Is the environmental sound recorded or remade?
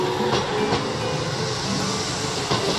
recorded